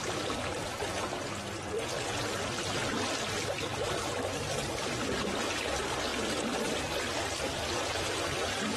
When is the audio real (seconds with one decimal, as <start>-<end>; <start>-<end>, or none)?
0.7-8.8